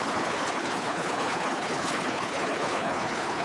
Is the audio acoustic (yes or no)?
no